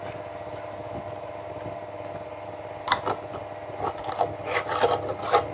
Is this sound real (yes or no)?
yes